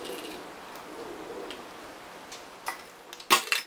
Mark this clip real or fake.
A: real